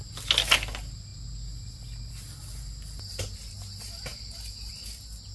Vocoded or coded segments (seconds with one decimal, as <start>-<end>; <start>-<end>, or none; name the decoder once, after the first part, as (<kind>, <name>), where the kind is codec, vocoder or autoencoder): none